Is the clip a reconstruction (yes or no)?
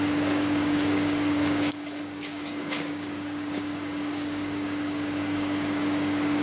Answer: yes